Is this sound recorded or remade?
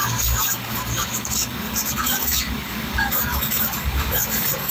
remade